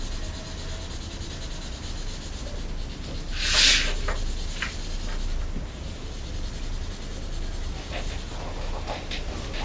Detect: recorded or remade recorded